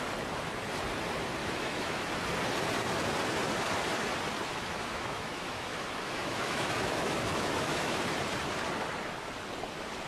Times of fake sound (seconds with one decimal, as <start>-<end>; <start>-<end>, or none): 1.4-2.1; 4.5-8.1